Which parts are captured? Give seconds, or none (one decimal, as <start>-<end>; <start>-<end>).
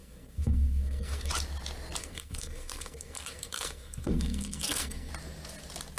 1.3-2.0; 5.1-6.0